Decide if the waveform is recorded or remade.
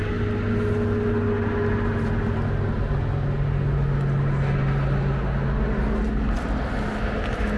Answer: recorded